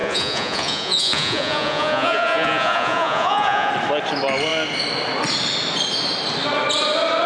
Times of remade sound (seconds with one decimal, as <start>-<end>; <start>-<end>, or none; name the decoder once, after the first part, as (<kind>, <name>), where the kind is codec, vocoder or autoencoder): 0.0-3.7 (vocoder, Vocos)